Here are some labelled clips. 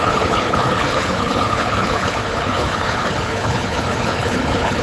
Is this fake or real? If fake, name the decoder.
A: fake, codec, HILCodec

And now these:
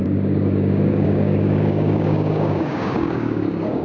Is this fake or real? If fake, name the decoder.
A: fake, codec, DAC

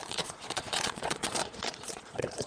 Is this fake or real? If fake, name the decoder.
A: fake, vocoder, Vocos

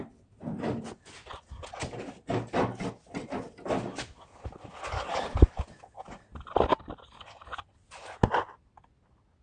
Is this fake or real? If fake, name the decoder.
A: real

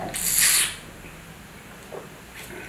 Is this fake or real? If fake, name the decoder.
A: real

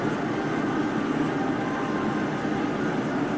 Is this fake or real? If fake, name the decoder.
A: real